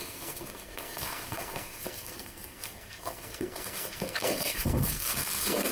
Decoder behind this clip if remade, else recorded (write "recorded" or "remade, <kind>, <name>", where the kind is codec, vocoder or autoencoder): remade, codec, SNAC